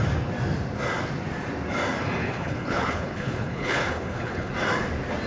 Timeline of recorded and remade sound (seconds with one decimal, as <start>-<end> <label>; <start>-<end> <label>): 0.0-2.2 recorded; 2.2-4.5 remade; 4.5-5.3 recorded